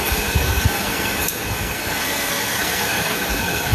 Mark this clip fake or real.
fake